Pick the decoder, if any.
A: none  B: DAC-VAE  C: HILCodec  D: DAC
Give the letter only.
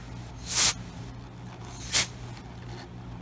A